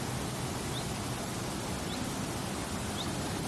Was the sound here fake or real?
real